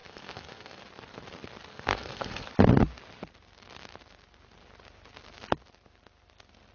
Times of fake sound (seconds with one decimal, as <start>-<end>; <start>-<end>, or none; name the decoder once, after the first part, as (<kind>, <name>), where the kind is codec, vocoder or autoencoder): 0.0-0.8 (codec, SNAC); 1.7-2.5